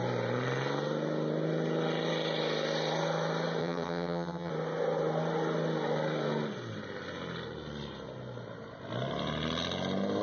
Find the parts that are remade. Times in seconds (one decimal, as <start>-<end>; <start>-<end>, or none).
3.6-4.5